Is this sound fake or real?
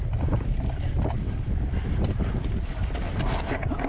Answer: real